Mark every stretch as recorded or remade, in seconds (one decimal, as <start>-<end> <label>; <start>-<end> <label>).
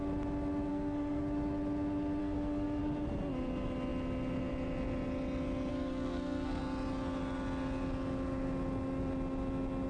0.0-0.7 recorded; 0.7-1.2 remade; 1.2-2.2 recorded; 2.2-2.8 remade; 2.8-5.7 recorded; 5.7-6.6 remade; 6.6-9.9 recorded